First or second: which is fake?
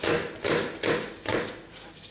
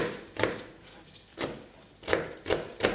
second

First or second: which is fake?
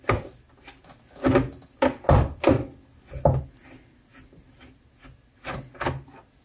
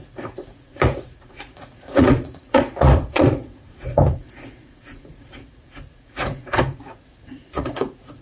second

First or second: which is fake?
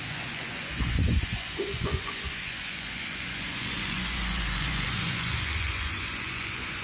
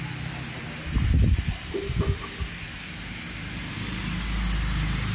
first